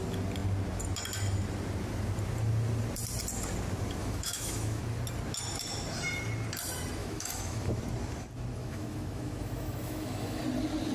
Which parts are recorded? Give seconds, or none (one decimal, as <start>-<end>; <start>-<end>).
0.0-4.0; 4.8-7.0; 7.8-8.6; 10.4-10.9